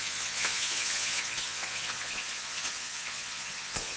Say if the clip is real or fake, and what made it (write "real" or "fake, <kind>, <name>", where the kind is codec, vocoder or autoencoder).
fake, vocoder, Vocos